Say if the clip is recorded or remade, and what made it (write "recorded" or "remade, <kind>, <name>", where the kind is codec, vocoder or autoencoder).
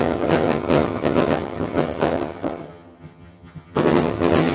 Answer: remade, vocoder, HiFi-GAN